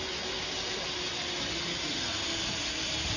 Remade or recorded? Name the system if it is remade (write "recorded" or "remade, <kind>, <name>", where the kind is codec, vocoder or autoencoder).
recorded